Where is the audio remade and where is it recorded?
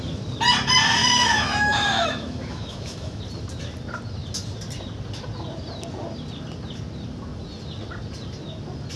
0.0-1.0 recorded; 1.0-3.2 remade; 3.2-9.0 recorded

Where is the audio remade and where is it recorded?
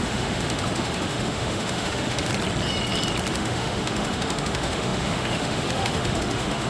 0.0-2.3 remade; 2.3-3.3 recorded; 3.3-6.7 remade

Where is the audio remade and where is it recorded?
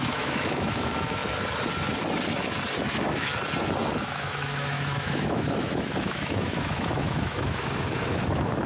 0.0-1.2 remade; 1.2-2.9 recorded; 2.9-3.3 remade; 3.3-4.0 recorded; 4.0-8.7 remade